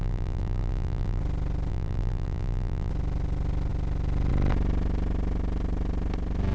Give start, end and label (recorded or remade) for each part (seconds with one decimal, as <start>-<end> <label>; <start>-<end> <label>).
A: 0.0-1.2 remade; 1.2-1.7 recorded; 1.7-2.9 remade; 2.9-6.5 recorded